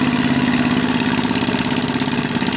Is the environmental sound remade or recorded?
recorded